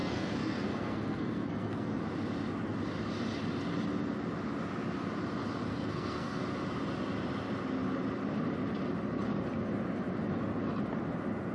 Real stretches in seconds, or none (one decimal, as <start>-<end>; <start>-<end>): 2.0-5.6; 6.4-11.5